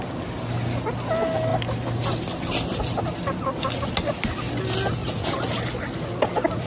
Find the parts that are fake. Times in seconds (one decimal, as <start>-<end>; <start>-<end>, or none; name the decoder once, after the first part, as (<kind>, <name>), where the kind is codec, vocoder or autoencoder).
5.0-5.7 (vocoder, BigVGAN v2)